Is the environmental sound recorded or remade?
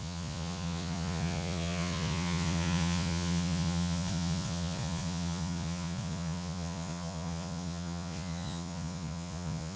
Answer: remade